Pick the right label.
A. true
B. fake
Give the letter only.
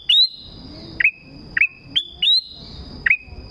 A